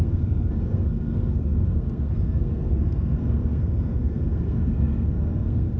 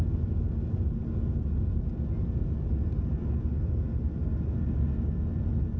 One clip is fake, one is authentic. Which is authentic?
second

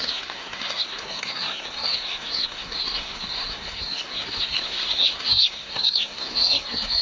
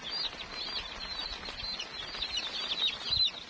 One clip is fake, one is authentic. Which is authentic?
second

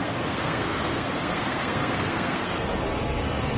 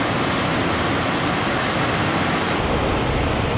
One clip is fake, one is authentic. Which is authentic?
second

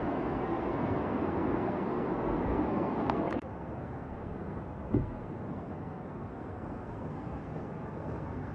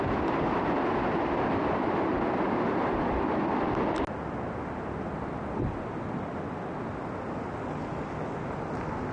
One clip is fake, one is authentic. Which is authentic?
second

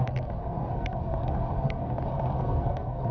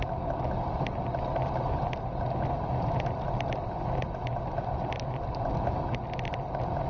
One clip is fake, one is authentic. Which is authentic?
second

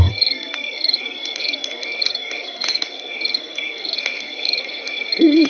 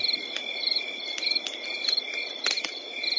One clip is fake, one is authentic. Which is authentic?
second